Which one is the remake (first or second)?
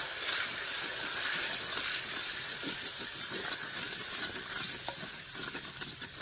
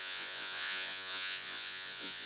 second